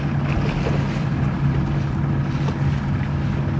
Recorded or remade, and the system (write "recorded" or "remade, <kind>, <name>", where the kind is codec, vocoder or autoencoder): recorded